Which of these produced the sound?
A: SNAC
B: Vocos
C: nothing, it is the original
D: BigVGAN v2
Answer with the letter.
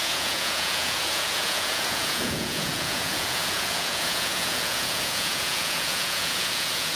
B